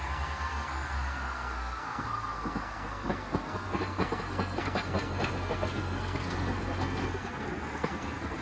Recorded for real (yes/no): no